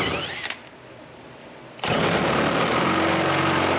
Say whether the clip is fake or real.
real